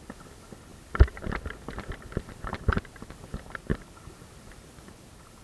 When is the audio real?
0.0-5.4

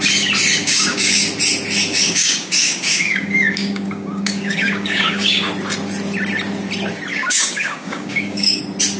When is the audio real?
0.0-0.6; 1.3-1.9; 5.5-7.1; 8.6-9.0

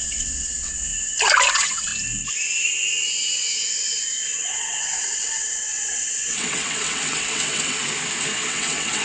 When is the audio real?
0.9-1.5; 1.9-4.5; 7.8-8.5

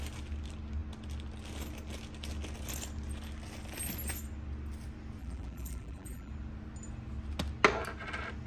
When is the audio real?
0.0-5.2; 6.3-8.5

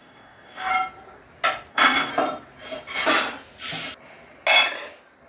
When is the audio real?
0.7-1.7; 2.1-5.3

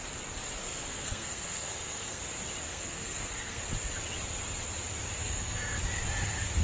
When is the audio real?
0.0-0.6; 2.2-2.7; 3.6-5.2; 5.8-6.6